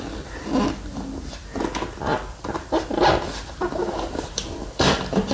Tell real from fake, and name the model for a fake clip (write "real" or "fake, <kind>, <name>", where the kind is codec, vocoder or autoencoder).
fake, vocoder, BigVGAN v2